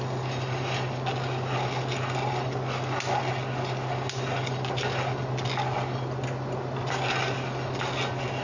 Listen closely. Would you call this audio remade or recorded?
recorded